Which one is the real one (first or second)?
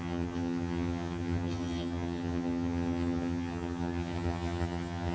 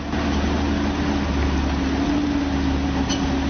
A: second